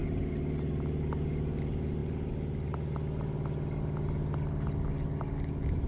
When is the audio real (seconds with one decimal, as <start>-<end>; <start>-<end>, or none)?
0.0-5.9